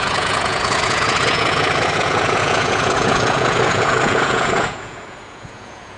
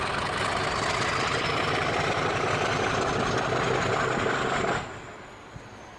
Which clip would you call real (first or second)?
second